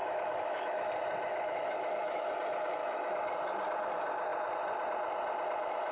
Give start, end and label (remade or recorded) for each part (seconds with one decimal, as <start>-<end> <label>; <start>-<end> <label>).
0.0-0.9 remade; 0.9-1.3 recorded; 1.3-2.3 remade; 2.3-2.8 recorded; 2.8-3.3 remade; 3.3-5.9 recorded